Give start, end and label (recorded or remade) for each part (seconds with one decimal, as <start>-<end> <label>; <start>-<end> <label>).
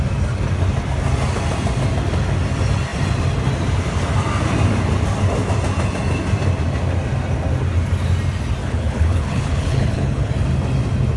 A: 0.0-8.6 recorded; 8.6-10.3 remade; 10.3-11.2 recorded